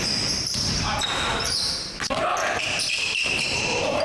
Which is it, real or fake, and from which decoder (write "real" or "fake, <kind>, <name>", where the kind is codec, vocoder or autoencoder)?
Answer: fake, vocoder, BigVGAN v2